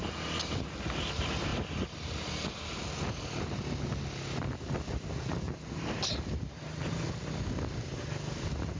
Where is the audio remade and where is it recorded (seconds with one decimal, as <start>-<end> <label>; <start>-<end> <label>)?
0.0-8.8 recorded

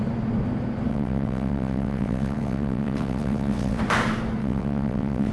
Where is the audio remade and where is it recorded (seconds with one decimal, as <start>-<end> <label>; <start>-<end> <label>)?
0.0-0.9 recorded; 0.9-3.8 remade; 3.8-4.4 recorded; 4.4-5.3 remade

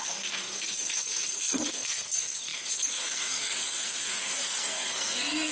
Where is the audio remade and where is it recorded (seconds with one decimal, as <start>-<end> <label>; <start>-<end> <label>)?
0.0-5.5 remade

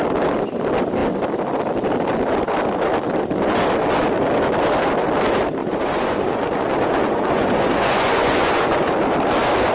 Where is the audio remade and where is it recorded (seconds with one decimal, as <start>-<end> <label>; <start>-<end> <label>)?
0.0-5.6 recorded; 5.6-8.9 remade; 8.9-9.7 recorded

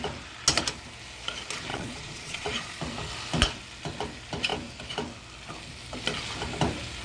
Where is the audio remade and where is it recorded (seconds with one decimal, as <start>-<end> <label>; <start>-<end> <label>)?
0.0-1.7 recorded; 1.7-2.8 remade; 2.8-7.0 recorded

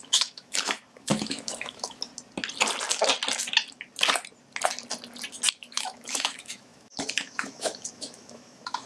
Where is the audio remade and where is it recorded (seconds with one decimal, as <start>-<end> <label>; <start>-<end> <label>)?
0.0-2.1 remade; 2.1-5.5 recorded; 5.5-8.9 remade

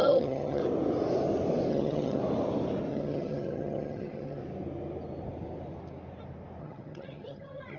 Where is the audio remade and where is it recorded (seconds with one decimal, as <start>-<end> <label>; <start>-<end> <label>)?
0.0-0.6 remade; 0.6-1.7 recorded; 1.7-2.2 remade; 2.2-2.9 recorded; 2.9-4.4 remade; 4.4-6.6 recorded; 6.6-7.8 remade

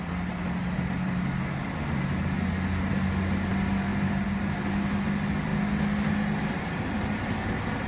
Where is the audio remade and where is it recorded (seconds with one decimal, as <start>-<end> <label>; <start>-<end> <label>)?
0.0-3.9 recorded; 3.9-4.4 remade; 4.4-7.9 recorded